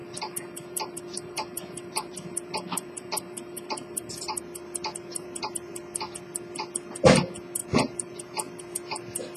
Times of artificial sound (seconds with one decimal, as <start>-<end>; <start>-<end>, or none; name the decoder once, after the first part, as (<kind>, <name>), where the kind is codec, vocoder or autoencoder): 0.0-4.4 (vocoder, BigVGAN v2); 5.1-5.8; 7.6-8.6